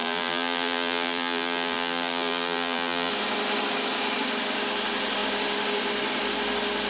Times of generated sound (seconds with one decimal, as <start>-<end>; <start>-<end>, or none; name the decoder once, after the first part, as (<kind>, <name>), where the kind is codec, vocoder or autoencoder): 0.0-3.1 (vocoder, BigVGAN v2)

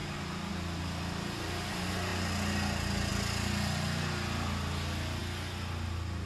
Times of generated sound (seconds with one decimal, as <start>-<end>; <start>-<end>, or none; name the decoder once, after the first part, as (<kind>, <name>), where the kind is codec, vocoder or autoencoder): none

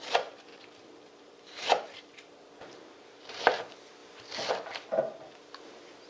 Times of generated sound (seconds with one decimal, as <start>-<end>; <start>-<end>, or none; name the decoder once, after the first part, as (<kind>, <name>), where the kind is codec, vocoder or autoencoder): 0.5-3.4 (vocoder, BigVGAN v2)

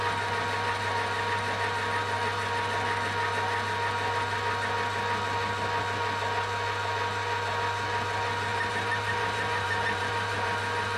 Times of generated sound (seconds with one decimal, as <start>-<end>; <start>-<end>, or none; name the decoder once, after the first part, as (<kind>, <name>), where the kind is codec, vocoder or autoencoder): 8.5-10.5 (vocoder, BigVGAN v2)

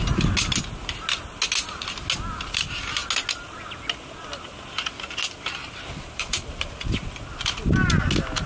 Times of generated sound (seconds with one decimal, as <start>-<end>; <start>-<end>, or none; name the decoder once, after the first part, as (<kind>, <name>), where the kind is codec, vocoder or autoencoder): 5.6-6.7 (vocoder, BigVGAN v2)

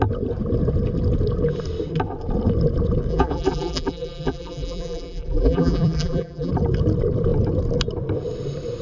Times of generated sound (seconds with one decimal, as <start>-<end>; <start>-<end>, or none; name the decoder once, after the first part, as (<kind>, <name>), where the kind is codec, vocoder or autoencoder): 3.1-6.5 (vocoder, BigVGAN v2)